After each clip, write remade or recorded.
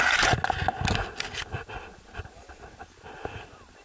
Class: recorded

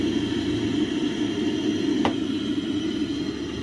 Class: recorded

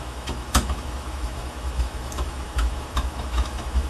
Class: remade